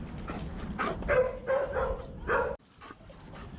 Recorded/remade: recorded